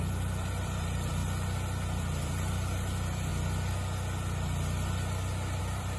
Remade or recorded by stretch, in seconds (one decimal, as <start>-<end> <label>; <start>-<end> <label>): 0.0-1.2 remade; 1.2-1.8 recorded; 1.8-3.3 remade; 3.3-5.6 recorded; 5.6-6.0 remade